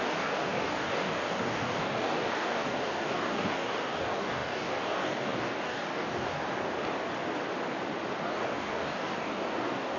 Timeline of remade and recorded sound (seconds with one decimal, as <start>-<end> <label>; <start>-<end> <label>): 0.0-6.6 remade; 6.6-8.2 recorded; 8.2-10.0 remade